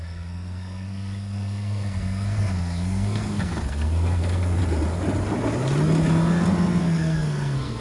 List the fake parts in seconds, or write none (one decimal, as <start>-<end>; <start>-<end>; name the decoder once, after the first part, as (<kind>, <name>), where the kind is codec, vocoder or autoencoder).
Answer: 0.0-4.6 (codec, SNAC); 6.8-7.8